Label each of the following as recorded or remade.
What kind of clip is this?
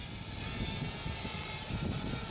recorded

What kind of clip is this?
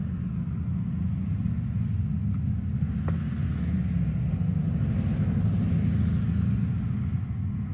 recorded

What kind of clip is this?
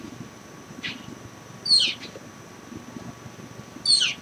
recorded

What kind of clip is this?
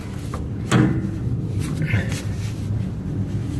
recorded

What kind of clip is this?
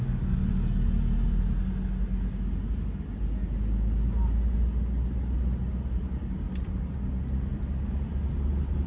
recorded